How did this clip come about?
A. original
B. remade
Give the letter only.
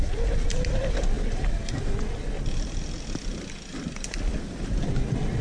A